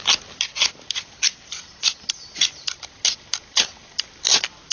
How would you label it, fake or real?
real